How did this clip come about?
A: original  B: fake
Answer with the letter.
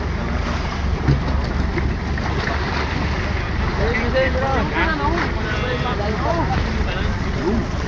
A